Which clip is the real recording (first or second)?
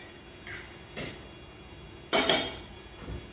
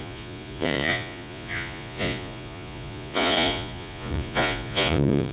first